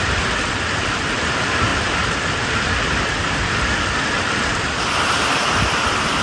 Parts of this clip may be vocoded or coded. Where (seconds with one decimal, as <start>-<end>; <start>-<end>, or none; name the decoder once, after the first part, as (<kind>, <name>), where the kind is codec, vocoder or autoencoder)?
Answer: 0.0-1.7 (vocoder, BigVGAN v2); 2.7-6.2